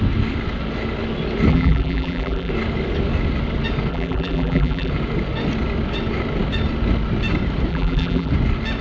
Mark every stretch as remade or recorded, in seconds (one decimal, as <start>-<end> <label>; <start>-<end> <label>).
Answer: 0.0-1.5 recorded; 1.5-2.5 remade; 2.5-3.9 recorded; 3.9-4.9 remade; 4.9-7.7 recorded; 7.7-8.3 remade; 8.3-8.8 recorded